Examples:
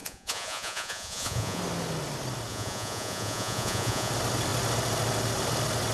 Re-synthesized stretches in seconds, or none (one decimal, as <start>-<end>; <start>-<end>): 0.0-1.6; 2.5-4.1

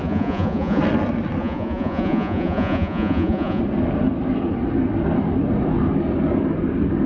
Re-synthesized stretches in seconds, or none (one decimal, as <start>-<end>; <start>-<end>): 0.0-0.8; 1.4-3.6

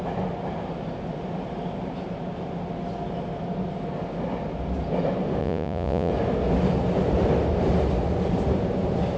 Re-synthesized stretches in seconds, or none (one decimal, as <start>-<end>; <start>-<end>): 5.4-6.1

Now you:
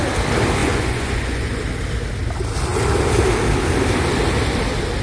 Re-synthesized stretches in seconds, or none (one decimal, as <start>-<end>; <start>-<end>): 0.6-1.6